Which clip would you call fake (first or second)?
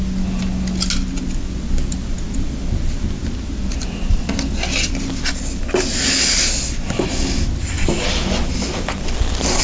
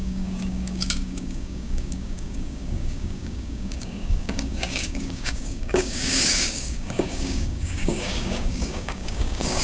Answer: second